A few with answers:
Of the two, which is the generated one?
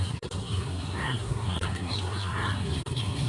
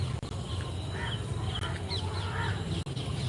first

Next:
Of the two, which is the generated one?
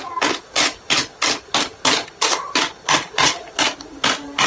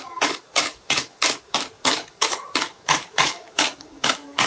second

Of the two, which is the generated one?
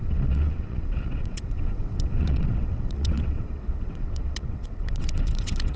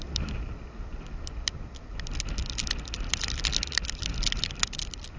first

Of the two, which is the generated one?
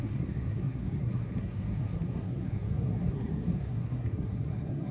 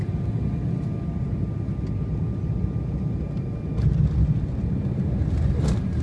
first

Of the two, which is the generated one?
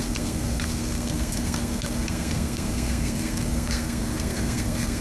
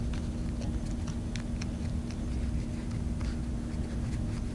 first